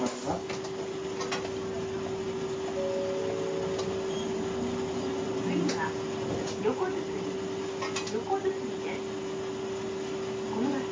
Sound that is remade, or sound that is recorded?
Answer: recorded